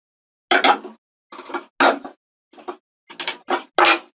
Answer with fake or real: real